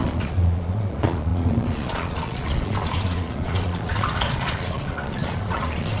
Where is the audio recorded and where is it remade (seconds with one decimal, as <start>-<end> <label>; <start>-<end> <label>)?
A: 0.0-6.0 remade